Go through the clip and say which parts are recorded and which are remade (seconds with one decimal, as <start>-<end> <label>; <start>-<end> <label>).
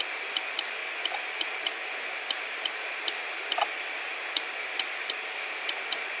0.0-0.8 remade; 0.8-1.6 recorded; 1.6-3.5 remade; 3.5-4.1 recorded; 4.1-6.2 remade